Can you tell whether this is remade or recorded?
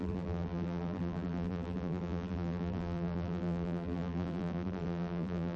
remade